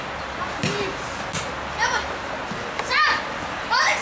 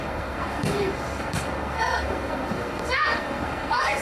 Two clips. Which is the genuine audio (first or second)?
first